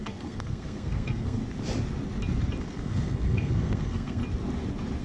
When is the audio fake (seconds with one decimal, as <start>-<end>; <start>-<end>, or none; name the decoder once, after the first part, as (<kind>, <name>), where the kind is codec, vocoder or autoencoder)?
0.0-1.4 (codec, SNAC); 2.6-4.2